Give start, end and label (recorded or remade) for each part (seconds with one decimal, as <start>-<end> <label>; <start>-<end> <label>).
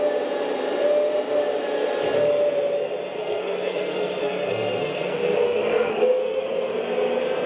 0.0-3.2 recorded; 3.2-6.7 remade; 6.7-7.5 recorded